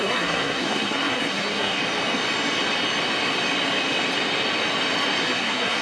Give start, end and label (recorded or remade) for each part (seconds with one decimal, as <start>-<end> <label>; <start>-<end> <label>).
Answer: 0.0-1.8 remade; 1.8-5.2 recorded; 5.2-5.8 remade